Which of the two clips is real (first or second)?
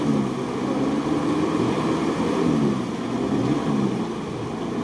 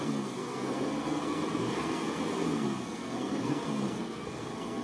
first